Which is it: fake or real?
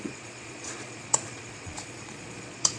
fake